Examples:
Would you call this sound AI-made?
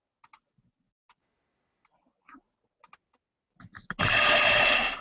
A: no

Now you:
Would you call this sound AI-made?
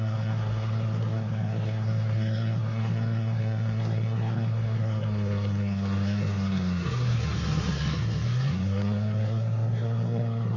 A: yes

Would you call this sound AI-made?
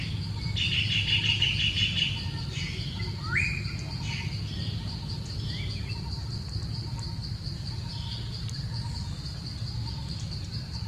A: no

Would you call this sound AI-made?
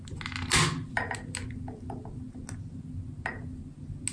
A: no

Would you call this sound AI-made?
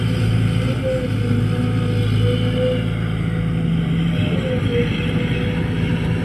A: no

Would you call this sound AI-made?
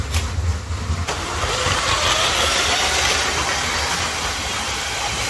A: no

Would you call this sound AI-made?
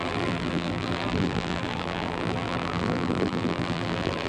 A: yes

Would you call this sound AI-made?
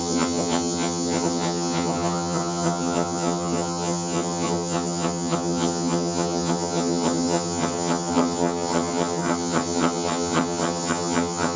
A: yes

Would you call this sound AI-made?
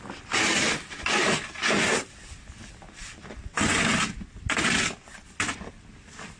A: no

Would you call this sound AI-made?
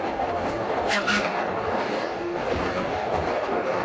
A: yes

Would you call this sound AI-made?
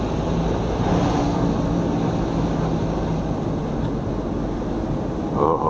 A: no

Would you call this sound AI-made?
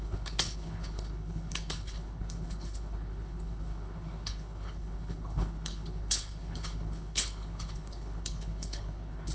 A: yes